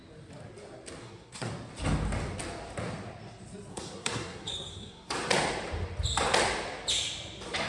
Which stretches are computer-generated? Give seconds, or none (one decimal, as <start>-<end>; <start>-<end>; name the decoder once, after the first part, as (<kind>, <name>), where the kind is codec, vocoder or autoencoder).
1.0-1.5 (codec, SNAC); 3.7-5.1